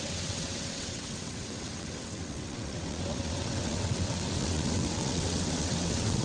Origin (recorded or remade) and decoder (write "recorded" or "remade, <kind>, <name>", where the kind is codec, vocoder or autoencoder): remade, vocoder, WaveNeXt